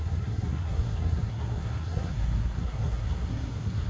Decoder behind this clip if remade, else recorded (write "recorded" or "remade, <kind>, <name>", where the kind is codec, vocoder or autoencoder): remade, codec, SNAC